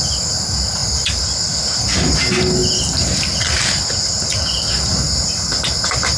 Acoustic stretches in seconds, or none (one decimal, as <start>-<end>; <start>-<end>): 0.0-6.2

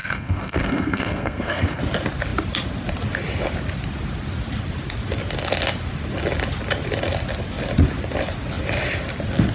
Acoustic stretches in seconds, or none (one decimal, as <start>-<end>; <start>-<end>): 1.8-9.5

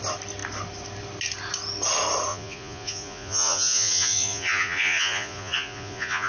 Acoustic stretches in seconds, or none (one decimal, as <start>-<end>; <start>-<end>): 0.0-2.3

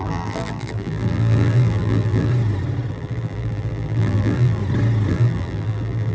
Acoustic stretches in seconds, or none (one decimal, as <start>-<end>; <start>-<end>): 2.3-2.9; 4.6-5.1

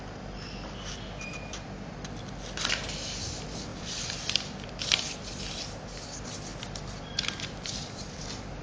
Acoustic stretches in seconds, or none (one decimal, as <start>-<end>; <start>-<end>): 0.0-3.7; 4.3-6.5

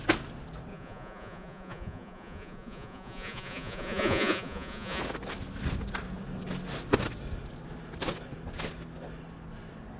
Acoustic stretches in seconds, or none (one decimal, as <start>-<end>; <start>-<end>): 0.0-0.7; 5.0-10.0

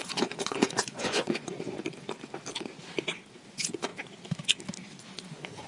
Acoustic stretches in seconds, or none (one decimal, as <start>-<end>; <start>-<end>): 1.8-3.5; 3.9-5.1

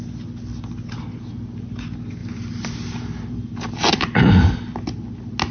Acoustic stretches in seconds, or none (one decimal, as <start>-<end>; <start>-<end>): 0.0-2.2; 4.3-5.5